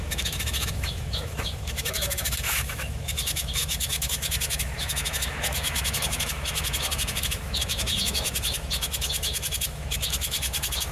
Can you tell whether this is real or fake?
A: fake